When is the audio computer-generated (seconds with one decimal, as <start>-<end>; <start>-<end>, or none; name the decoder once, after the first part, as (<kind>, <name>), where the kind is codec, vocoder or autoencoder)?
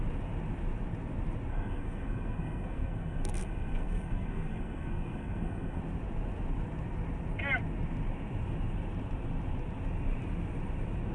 1.5-5.8 (codec, SNAC)